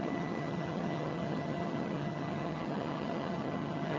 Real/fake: fake